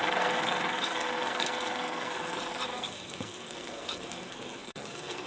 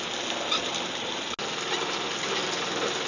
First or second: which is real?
second